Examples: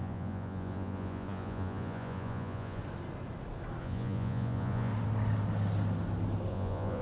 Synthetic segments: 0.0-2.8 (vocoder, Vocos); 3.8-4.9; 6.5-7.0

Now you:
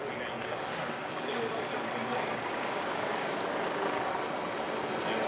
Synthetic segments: 0.4-1.4 (codec, DAC); 2.0-4.1